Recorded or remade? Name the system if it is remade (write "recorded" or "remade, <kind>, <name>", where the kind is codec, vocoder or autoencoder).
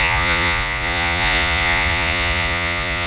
remade, vocoder, Vocos